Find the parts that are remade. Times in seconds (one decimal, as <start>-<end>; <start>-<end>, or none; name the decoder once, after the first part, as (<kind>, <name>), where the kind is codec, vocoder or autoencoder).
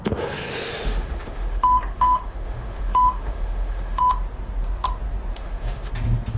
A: 0.5-4.0 (autoencoder, DAC-VAE); 5.3-5.9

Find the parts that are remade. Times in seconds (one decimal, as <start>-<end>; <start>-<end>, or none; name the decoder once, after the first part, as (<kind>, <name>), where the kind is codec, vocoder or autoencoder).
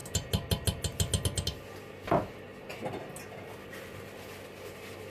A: none